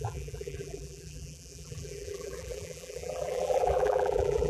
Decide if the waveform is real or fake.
fake